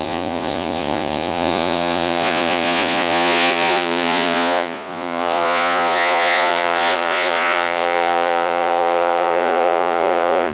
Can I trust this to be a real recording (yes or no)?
no